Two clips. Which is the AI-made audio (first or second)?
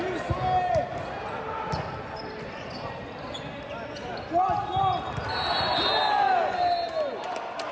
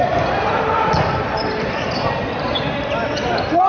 second